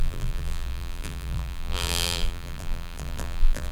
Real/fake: fake